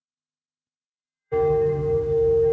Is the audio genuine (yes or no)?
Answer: no